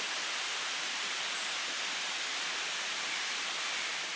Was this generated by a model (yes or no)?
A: no